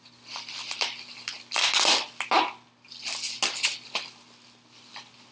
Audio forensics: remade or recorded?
recorded